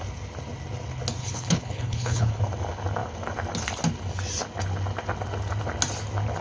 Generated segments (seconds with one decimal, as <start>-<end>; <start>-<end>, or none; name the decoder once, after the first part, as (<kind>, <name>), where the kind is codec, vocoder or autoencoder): 1.2-2.4 (codec, HILCodec)